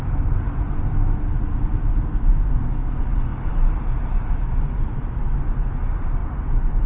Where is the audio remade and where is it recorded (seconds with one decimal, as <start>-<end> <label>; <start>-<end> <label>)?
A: 0.0-1.9 recorded; 1.9-2.9 remade; 2.9-6.9 recorded